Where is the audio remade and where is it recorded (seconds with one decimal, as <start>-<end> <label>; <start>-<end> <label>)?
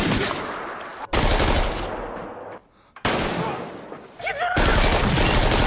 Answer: 0.0-0.9 recorded; 0.9-1.9 remade; 1.9-4.7 recorded; 4.7-5.7 remade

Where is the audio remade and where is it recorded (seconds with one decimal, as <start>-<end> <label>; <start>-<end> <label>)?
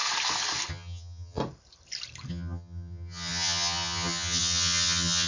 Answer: 0.0-0.7 recorded; 0.7-1.4 remade; 1.4-2.3 recorded; 2.3-5.3 remade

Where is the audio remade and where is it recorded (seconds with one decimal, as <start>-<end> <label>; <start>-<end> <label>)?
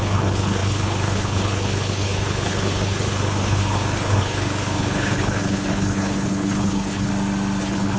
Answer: 0.0-7.1 remade; 7.1-7.6 recorded; 7.6-8.0 remade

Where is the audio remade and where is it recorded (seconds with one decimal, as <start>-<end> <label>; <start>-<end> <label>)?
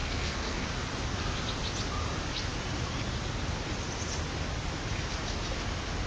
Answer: 0.0-0.7 remade; 0.7-6.1 recorded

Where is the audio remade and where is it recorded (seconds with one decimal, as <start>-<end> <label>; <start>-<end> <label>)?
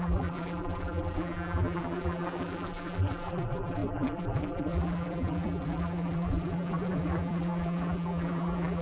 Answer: 0.0-8.8 remade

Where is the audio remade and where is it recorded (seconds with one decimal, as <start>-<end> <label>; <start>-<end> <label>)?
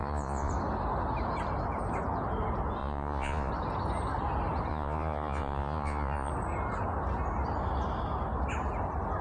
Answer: 0.0-0.5 remade; 0.5-2.8 recorded; 2.8-3.5 remade; 3.5-4.7 recorded; 4.7-6.3 remade; 6.3-9.2 recorded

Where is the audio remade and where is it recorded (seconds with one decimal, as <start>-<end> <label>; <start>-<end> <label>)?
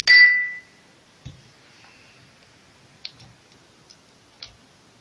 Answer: 0.0-5.0 recorded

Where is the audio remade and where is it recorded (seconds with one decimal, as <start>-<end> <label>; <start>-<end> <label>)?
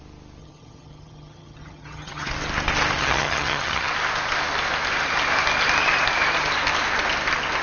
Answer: 0.0-0.4 recorded; 0.4-2.3 remade; 2.3-3.0 recorded; 3.0-3.9 remade; 3.9-7.6 recorded